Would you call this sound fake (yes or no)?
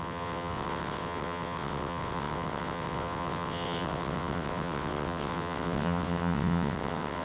yes